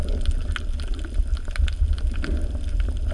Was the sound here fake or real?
real